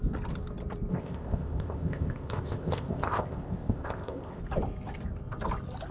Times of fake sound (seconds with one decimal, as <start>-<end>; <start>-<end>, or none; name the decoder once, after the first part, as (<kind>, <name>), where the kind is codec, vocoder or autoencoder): 0.9-4.4 (codec, ZipCodec)